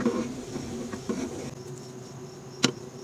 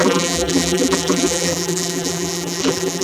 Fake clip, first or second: second